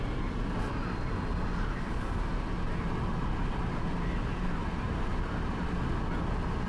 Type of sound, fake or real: real